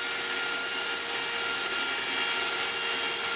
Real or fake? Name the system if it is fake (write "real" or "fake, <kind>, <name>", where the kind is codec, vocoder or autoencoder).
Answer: real